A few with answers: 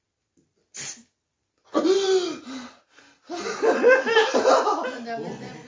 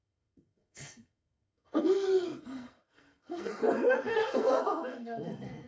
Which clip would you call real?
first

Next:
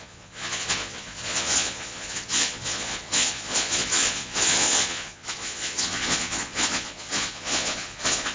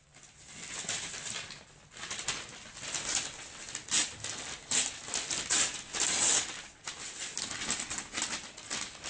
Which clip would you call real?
second